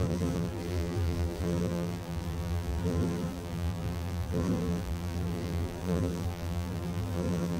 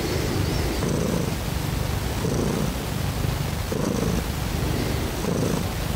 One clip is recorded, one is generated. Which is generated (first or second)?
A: first